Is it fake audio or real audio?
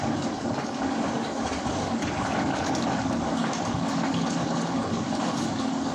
fake